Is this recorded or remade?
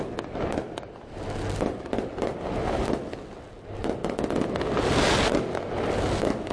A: recorded